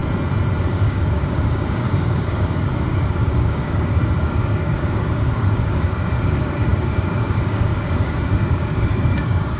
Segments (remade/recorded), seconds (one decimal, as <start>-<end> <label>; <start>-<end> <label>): 0.0-0.7 recorded; 0.7-9.6 remade